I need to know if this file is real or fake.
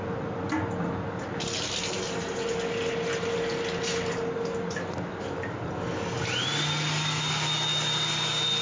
real